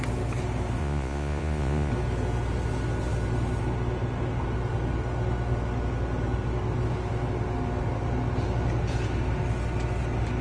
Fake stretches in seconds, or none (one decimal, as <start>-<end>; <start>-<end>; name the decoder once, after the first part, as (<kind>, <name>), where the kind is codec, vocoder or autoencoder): 0.8-1.9 (vocoder, Vocos)